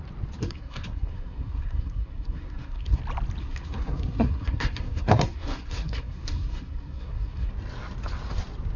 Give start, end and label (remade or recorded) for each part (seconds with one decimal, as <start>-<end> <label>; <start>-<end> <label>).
0.0-0.4 recorded; 0.4-3.0 remade; 3.0-3.4 recorded; 3.4-7.5 remade; 7.5-8.8 recorded